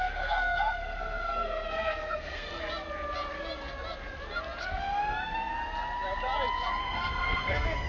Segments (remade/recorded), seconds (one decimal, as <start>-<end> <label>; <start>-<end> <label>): 0.0-2.5 remade; 2.5-4.6 recorded; 4.6-5.6 remade; 5.6-6.8 recorded; 6.8-7.9 remade